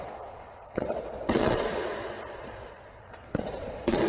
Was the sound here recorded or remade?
remade